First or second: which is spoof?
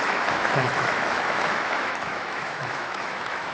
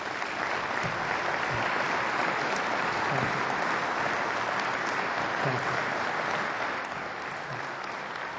first